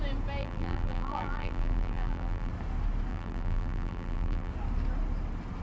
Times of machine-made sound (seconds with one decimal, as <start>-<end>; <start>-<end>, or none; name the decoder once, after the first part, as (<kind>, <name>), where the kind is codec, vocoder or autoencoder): 0.4-2.5 (vocoder, BigVGAN v2); 3.1-4.5